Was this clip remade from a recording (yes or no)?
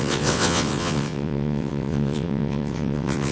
yes